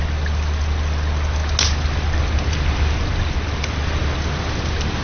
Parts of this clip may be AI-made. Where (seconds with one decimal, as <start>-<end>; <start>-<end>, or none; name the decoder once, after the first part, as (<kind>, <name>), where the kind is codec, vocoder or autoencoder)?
none